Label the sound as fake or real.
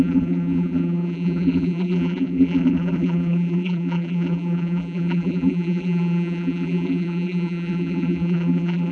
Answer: fake